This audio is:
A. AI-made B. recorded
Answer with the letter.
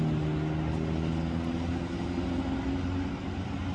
B